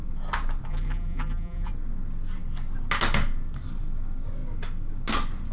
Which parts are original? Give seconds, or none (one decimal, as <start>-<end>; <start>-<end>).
0.0-0.7; 1.7-5.5

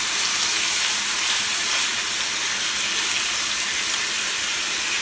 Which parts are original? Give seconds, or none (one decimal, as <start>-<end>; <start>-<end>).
0.0-5.0

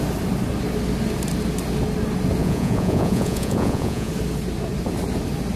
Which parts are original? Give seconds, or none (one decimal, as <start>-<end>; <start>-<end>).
0.0-2.4; 4.1-5.6

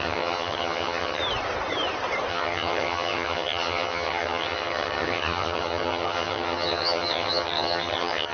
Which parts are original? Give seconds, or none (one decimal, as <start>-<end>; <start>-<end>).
1.2-2.3

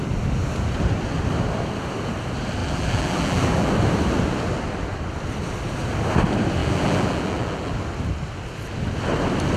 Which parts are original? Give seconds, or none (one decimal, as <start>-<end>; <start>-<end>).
0.0-2.6; 3.7-6.6; 7.7-9.6

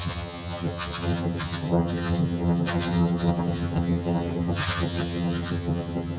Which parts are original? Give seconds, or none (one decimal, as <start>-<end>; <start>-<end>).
none

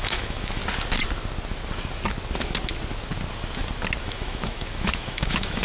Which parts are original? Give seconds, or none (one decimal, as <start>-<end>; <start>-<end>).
0.6-4.0